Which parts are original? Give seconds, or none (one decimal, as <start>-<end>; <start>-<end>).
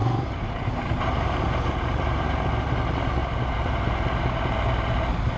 2.4-3.2; 3.8-5.4